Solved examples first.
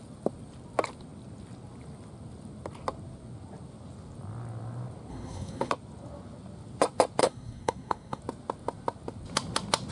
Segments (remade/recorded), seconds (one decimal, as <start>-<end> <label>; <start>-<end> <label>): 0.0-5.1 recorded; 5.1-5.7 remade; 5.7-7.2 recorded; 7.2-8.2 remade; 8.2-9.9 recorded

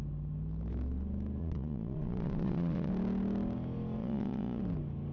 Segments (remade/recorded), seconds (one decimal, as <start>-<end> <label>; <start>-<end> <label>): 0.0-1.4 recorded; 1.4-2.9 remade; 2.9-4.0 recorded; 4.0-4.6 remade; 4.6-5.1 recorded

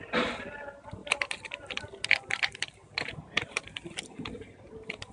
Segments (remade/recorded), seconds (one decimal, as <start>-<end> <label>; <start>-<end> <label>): 0.0-1.0 recorded; 1.0-1.8 remade; 1.8-5.1 recorded